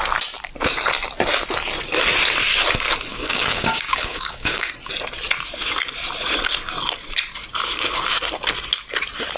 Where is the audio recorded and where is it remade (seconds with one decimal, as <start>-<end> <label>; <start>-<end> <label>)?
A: 0.0-3.1 recorded; 3.1-4.7 remade; 4.7-9.4 recorded